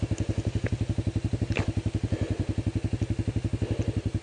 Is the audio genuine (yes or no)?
yes